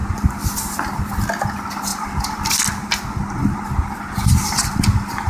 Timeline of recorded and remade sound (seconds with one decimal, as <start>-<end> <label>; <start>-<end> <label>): 0.0-5.3 recorded